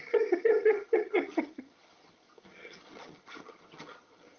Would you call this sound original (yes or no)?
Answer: no